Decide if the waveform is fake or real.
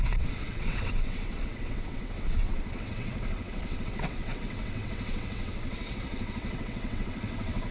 fake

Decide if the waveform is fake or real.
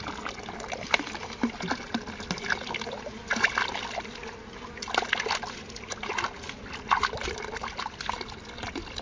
real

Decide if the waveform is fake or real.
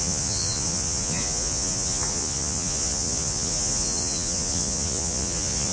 fake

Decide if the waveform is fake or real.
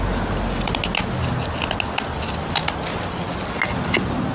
real